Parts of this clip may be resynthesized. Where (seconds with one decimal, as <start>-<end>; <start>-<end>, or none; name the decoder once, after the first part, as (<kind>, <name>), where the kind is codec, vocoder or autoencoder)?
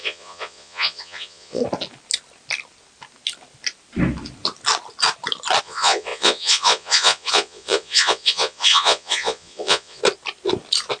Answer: 0.0-1.6 (vocoder, Vocos); 5.6-10.0